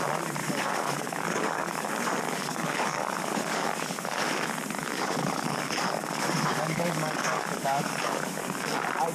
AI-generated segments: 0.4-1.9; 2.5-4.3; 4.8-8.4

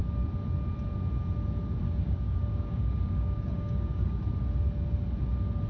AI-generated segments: 1.8-4.2

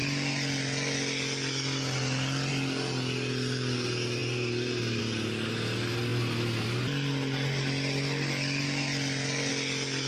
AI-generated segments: none

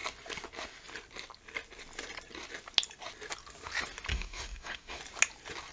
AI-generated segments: 4.1-5.0

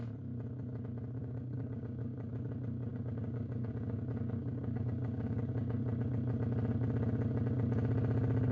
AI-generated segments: 1.2-2.3; 2.9-4.0; 4.4-5.8

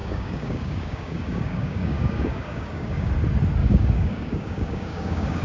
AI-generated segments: 0.0-3.1; 3.6-5.4

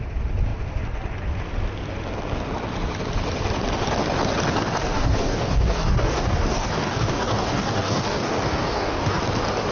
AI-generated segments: 4.8-9.2